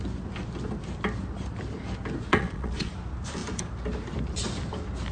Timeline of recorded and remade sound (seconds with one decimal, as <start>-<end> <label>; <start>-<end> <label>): 0.0-2.3 recorded; 2.3-2.9 remade; 2.9-5.1 recorded